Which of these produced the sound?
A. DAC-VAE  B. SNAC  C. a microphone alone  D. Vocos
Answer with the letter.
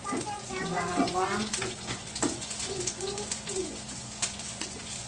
D